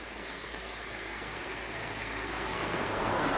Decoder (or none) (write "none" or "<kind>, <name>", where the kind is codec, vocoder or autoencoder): codec, SNAC